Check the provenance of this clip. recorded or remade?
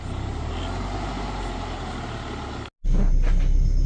recorded